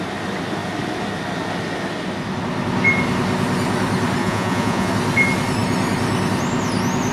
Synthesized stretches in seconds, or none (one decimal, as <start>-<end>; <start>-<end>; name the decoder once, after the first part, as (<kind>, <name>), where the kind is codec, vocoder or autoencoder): 4.2-4.9 (vocoder, Vocos)